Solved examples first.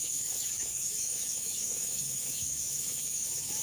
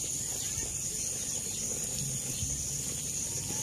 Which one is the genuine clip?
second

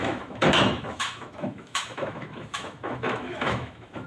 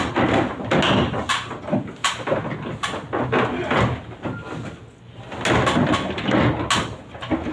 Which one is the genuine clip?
second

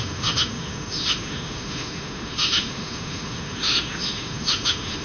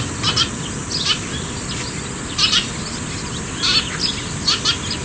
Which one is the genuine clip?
second